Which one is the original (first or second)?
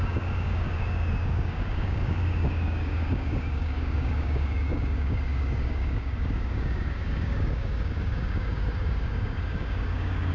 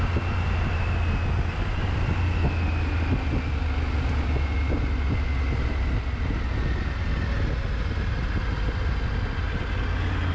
second